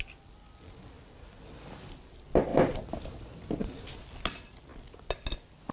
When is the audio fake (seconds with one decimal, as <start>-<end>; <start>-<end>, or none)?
none